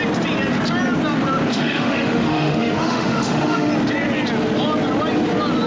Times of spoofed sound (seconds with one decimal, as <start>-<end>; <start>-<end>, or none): 1.5-3.7